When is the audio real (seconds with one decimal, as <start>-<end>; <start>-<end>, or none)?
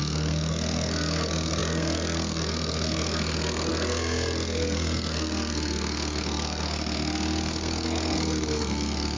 none